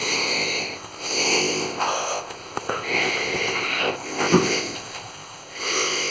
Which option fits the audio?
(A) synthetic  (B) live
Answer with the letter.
A